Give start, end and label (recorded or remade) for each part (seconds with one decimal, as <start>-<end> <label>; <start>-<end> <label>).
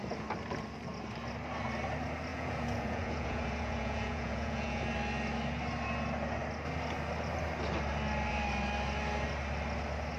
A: 0.0-2.3 recorded; 2.3-4.8 remade; 4.8-10.2 recorded